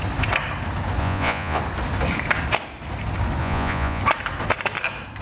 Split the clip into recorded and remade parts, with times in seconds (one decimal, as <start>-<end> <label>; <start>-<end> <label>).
0.0-1.0 recorded; 1.0-1.6 remade; 1.6-3.4 recorded; 3.4-4.0 remade; 4.0-5.2 recorded